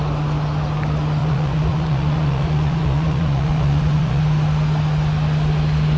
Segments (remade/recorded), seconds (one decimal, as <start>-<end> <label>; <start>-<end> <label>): 0.0-1.2 recorded; 1.2-4.2 remade; 4.2-6.0 recorded